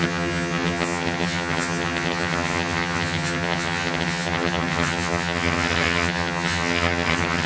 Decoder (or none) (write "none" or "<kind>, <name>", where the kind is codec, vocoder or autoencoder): vocoder, HiFi-GAN